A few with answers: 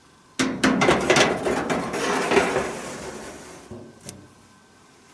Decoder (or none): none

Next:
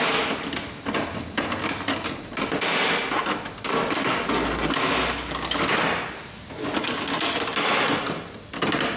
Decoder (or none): none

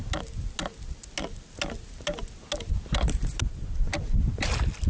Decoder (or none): none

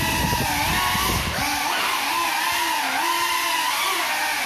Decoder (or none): none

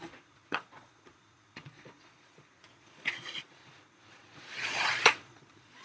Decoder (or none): vocoder, Vocos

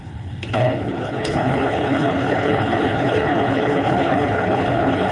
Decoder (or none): codec, HILCodec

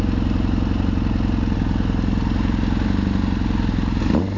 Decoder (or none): none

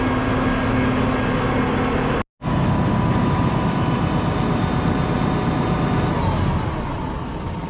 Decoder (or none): none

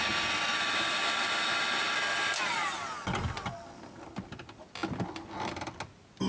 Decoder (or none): none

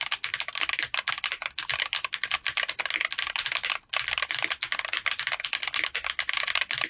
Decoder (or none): none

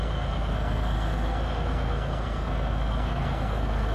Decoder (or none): codec, SNAC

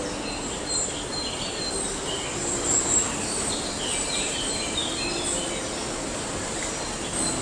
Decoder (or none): none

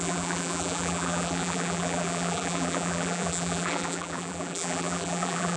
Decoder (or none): vocoder, BigVGAN v2